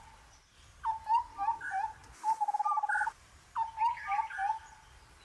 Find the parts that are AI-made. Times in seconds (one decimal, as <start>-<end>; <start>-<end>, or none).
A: 0.0-0.5; 1.2-5.2